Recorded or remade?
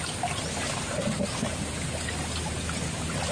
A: recorded